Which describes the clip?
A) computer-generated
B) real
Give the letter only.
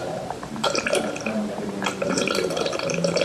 A